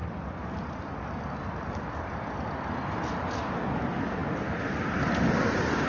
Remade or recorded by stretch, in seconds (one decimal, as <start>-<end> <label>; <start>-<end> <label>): 0.0-5.9 recorded